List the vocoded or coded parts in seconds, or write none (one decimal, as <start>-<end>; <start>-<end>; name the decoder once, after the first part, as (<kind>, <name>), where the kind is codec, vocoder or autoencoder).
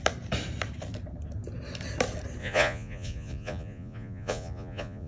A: 2.4-5.1 (vocoder, Vocos)